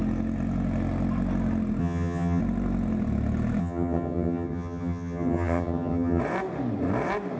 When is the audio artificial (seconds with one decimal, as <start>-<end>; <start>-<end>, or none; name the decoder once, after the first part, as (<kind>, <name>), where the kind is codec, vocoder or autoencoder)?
1.8-2.4 (vocoder, HiFi-GAN); 3.6-6.2